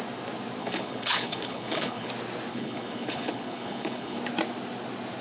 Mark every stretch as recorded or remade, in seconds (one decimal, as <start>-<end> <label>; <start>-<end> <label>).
0.0-0.6 recorded; 0.6-2.1 remade; 2.1-2.5 recorded; 2.5-4.2 remade; 4.2-5.2 recorded